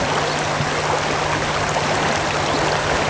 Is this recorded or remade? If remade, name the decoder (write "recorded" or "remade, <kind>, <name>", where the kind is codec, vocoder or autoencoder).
recorded